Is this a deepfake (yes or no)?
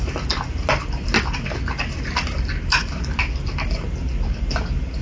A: no